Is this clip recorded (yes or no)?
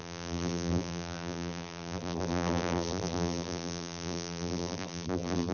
no